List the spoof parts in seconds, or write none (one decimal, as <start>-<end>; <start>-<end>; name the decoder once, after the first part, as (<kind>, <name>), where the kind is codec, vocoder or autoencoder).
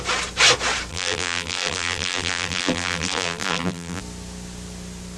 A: 0.9-4.0 (vocoder, BigVGAN v2)